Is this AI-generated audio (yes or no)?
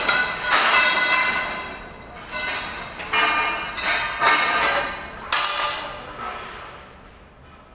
no